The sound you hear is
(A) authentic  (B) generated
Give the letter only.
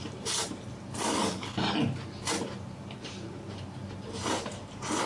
B